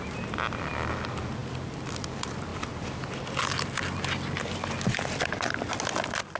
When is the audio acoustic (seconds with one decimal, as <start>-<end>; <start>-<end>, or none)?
2.5-6.4